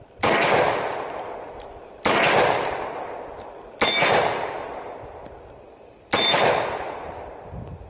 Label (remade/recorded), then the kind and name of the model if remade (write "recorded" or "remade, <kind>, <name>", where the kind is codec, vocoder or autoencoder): recorded